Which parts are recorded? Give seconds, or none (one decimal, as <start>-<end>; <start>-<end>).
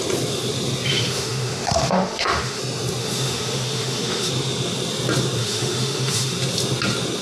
0.0-0.9; 2.6-3.0; 4.3-5.4; 6.4-7.2